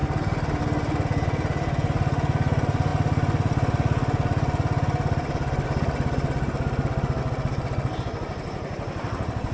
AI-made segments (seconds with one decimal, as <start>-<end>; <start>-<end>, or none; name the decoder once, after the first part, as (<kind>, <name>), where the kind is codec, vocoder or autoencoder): none